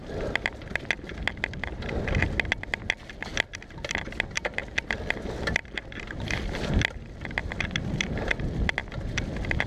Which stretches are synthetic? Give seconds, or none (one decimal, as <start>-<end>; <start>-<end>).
none